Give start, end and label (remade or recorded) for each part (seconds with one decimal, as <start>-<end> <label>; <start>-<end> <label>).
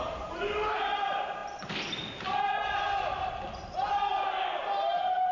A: 0.0-1.4 remade; 1.4-4.6 recorded; 4.6-5.3 remade